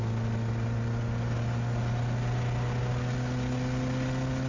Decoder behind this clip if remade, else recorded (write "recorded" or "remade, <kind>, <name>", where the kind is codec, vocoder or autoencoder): recorded